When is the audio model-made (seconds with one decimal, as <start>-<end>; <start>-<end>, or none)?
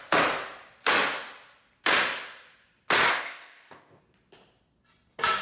3.1-4.0